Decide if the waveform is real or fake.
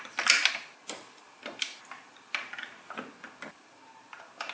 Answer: real